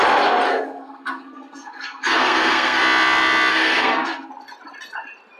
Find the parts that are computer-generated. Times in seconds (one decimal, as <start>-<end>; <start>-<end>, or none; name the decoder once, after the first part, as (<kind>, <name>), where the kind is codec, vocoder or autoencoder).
0.5-2.8 (codec, SNAC); 3.5-4.3